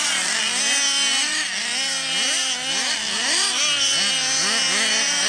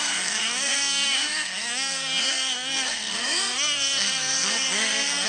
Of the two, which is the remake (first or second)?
second